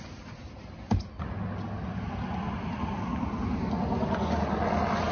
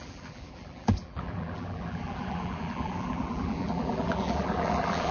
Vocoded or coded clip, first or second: second